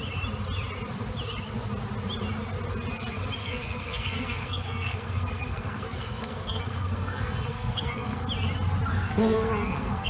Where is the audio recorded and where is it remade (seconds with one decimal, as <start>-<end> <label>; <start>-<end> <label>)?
0.0-3.4 recorded; 3.4-8.2 remade; 8.2-8.9 recorded; 8.9-10.1 remade